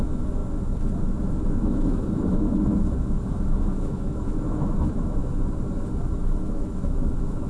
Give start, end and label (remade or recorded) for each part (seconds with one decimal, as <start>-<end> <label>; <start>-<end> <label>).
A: 0.0-0.4 remade; 0.4-1.3 recorded; 1.3-5.2 remade; 5.2-6.2 recorded; 6.2-7.5 remade